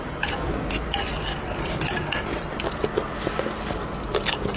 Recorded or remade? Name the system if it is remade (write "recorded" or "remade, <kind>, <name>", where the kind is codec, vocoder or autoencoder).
recorded